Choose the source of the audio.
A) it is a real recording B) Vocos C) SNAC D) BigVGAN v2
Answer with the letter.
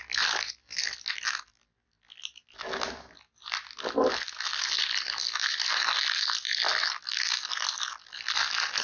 A